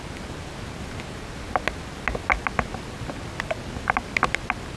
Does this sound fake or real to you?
real